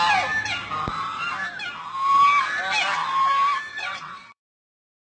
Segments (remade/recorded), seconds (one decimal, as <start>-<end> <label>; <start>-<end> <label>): 0.0-3.7 recorded; 3.7-4.4 remade; 4.4-5.0 recorded